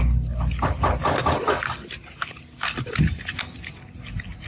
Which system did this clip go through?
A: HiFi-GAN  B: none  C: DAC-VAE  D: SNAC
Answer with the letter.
B